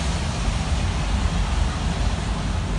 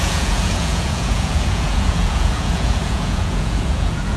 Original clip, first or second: first